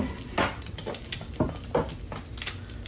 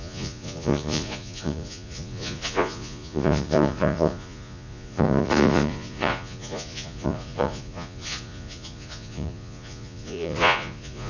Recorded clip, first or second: first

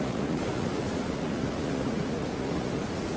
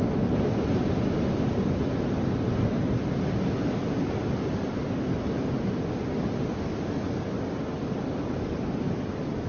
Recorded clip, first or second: second